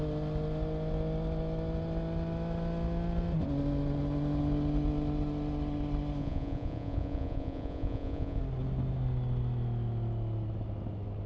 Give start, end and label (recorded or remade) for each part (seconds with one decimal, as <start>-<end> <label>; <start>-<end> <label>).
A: 0.0-6.2 recorded; 6.2-8.4 remade; 8.4-11.3 recorded